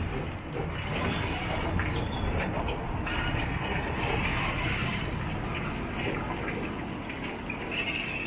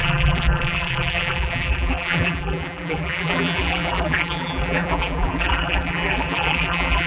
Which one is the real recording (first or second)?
first